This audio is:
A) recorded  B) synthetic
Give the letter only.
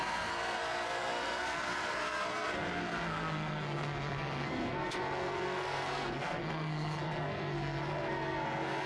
B